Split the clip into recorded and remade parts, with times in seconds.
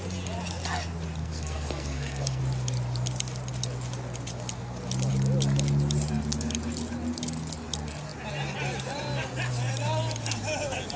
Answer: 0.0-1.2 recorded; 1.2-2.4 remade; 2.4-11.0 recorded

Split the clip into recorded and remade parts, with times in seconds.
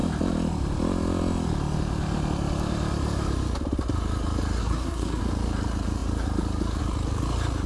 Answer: 0.0-4.6 recorded; 4.6-5.2 remade; 5.2-7.7 recorded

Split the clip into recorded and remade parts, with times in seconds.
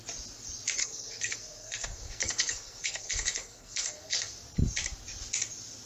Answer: 0.0-0.8 recorded; 0.8-4.3 remade; 4.3-5.8 recorded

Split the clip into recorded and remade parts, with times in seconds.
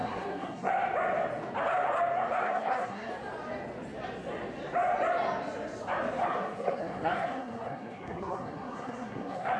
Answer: 0.0-0.7 remade; 0.7-2.4 recorded; 2.4-3.1 remade; 3.1-6.2 recorded; 6.2-9.6 remade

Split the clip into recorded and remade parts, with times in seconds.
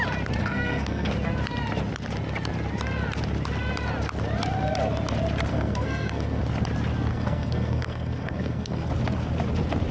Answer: 0.0-0.4 recorded; 0.4-1.1 remade; 1.1-5.5 recorded; 5.5-6.4 remade; 6.4-7.1 recorded; 7.1-8.9 remade; 8.9-9.9 recorded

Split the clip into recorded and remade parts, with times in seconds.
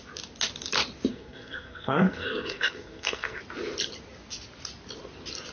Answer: 0.0-1.1 recorded; 1.1-3.4 remade; 3.4-5.5 recorded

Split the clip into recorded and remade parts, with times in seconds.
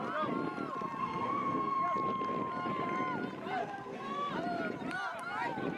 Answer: 0.0-1.0 recorded; 1.0-1.8 remade; 1.8-3.6 recorded; 3.6-4.3 remade; 4.3-5.8 recorded